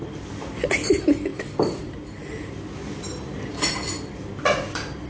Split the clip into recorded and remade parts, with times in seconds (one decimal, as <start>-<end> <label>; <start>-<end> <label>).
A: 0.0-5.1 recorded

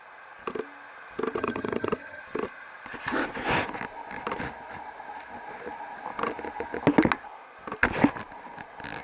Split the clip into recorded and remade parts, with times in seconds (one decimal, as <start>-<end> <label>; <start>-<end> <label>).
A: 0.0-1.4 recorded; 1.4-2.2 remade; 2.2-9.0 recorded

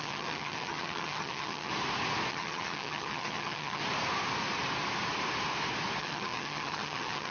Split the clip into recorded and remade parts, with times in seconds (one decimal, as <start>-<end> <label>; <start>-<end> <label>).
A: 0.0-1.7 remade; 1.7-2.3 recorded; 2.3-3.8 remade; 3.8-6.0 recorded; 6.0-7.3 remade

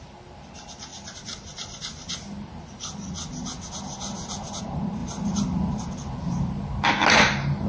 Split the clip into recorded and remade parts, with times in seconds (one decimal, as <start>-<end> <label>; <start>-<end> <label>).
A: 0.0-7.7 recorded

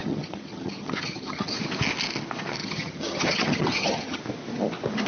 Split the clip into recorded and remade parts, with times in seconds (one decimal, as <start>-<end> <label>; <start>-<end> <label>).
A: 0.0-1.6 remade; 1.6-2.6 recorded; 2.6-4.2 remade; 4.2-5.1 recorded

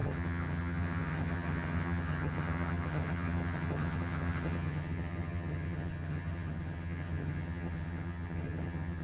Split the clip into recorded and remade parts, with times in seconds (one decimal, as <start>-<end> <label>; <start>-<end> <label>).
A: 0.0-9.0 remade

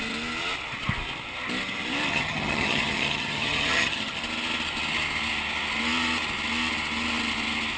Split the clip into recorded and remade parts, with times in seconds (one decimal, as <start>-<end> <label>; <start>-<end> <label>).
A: 0.0-2.1 recorded; 2.1-4.2 remade; 4.2-7.8 recorded

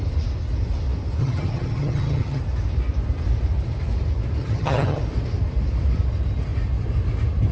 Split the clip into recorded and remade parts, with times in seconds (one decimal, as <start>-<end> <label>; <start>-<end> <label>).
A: 0.0-1.2 recorded; 1.2-2.4 remade; 2.4-4.4 recorded; 4.4-5.0 remade; 5.0-7.5 recorded